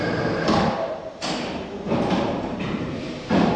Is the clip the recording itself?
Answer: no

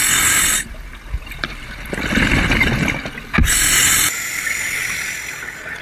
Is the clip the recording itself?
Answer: yes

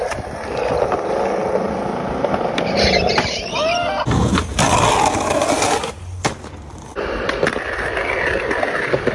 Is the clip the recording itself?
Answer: yes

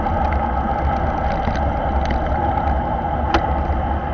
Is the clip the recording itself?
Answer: yes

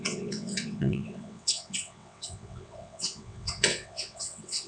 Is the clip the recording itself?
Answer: no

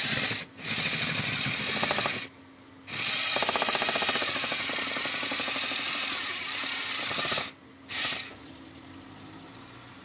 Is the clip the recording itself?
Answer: yes